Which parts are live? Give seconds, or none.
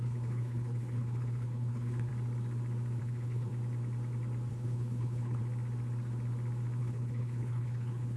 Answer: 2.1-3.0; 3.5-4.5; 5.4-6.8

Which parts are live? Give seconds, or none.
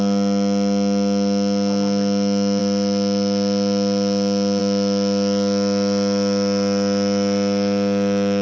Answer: 0.0-8.4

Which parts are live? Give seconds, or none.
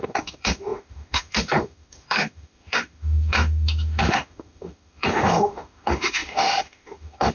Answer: none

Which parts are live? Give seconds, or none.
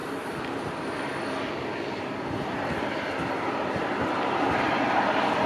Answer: 0.0-5.5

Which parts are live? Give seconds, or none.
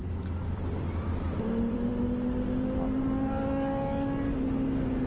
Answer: 1.9-5.1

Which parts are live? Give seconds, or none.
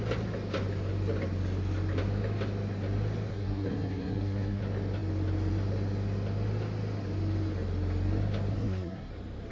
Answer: 0.0-3.3; 4.6-8.5; 9.1-9.5